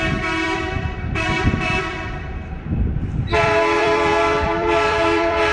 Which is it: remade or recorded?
remade